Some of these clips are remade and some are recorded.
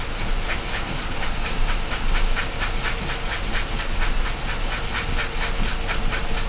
recorded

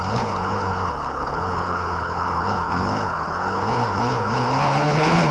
remade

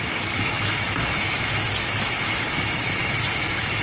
remade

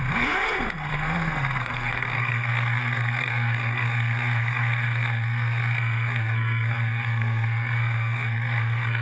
remade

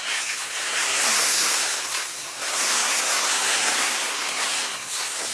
remade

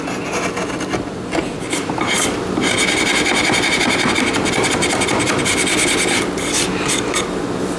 recorded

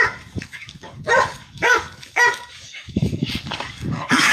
remade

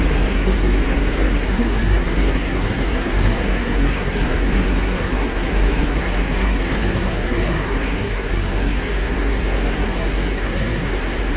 remade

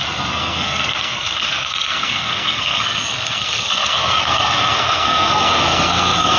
remade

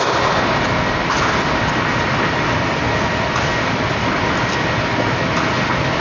recorded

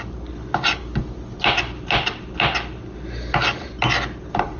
recorded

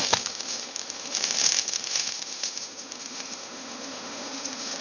remade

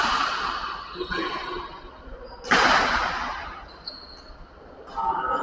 recorded